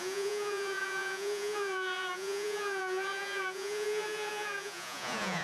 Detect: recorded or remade remade